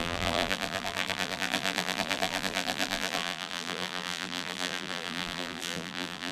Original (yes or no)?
no